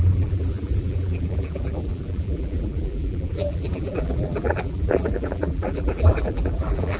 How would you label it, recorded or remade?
remade